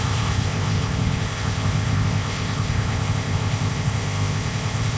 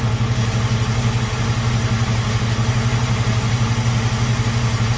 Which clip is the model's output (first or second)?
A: first